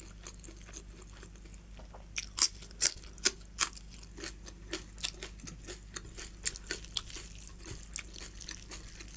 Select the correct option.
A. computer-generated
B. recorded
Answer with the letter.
B